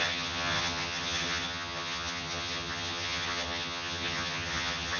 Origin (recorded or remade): remade